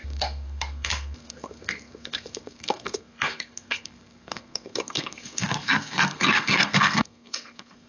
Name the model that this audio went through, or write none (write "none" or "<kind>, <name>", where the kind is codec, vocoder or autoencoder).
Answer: codec, SNAC